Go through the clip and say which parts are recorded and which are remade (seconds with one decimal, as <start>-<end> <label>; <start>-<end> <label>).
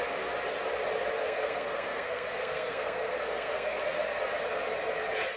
0.0-1.2 recorded; 1.2-3.8 remade; 3.8-5.4 recorded